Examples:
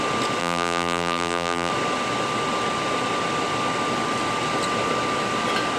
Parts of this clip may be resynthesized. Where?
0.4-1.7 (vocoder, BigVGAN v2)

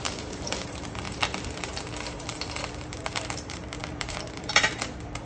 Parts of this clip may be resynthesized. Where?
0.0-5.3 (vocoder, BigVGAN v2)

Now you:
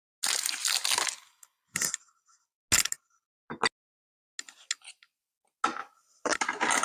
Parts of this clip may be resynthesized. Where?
5.8-6.3 (vocoder, BigVGAN v2)

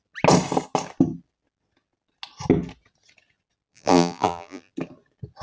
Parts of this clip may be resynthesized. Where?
3.7-4.7 (vocoder, BigVGAN v2)